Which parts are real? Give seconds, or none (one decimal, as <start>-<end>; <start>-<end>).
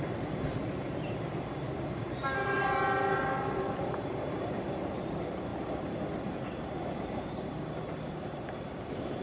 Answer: none